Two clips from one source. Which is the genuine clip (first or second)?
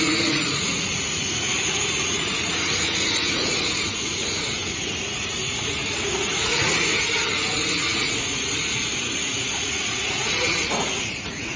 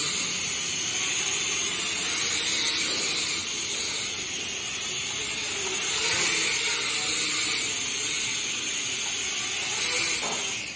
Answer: second